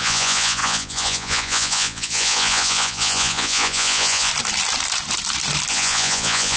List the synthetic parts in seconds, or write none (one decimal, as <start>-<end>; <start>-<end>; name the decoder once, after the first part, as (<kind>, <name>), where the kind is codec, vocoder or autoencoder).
0.0-4.3 (vocoder, Vocos); 5.7-6.6